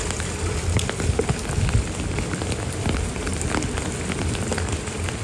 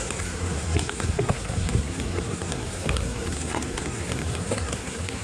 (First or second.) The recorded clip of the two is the first